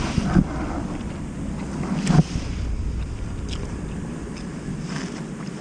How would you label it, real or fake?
real